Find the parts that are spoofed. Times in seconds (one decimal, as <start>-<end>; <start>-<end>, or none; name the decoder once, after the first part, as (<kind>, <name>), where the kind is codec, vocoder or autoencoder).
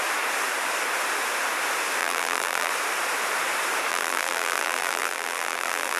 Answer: 2.0-2.7 (vocoder, BigVGAN v2); 3.9-6.0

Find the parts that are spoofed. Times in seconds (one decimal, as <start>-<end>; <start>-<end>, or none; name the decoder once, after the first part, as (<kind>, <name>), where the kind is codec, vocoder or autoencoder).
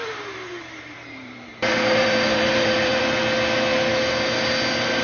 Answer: 0.0-3.0 (vocoder, BigVGAN v2)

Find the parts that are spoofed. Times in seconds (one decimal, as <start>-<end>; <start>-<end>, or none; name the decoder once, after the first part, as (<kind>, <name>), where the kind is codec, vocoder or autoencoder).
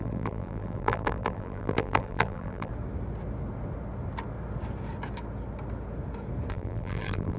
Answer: 0.0-2.7 (vocoder, BigVGAN v2); 6.5-7.4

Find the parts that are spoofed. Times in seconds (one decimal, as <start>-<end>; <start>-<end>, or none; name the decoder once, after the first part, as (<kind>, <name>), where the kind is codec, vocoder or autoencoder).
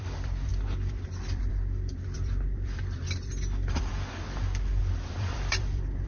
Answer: 0.0-3.9 (vocoder, BigVGAN v2); 4.8-6.1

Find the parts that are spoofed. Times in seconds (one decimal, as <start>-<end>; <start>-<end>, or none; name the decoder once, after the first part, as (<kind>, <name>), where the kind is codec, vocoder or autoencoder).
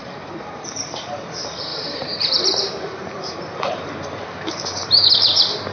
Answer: 0.0-1.0 (vocoder, BigVGAN v2); 1.7-5.1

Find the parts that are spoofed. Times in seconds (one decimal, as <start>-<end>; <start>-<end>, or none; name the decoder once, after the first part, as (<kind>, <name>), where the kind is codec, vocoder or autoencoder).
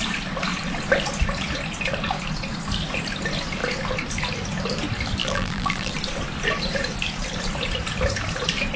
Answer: 5.2-5.9 (vocoder, BigVGAN v2)